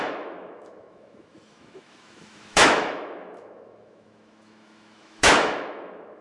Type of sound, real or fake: fake